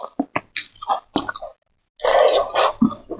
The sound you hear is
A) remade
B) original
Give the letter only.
B